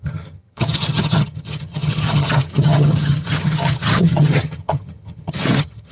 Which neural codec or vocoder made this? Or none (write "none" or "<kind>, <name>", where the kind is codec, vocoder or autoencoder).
vocoder, HiFi-GAN